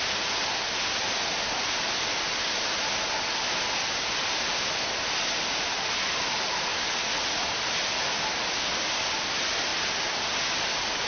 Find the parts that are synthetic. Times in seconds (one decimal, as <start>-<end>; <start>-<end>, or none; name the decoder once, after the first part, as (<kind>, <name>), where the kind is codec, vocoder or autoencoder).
none